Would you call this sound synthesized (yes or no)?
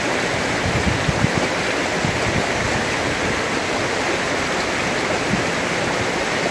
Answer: no